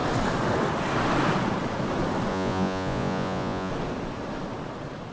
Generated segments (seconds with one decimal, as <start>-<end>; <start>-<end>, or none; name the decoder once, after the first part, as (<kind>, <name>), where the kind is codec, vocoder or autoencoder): 2.3-3.7 (vocoder, Vocos)